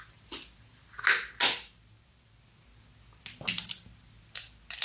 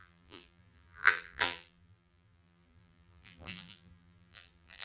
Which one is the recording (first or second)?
first